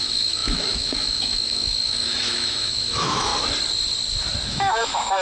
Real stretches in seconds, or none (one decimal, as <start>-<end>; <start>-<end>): 3.3-4.5